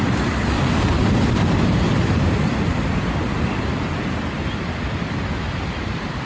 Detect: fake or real fake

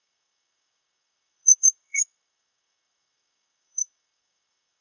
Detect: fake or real fake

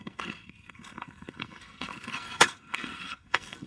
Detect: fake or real fake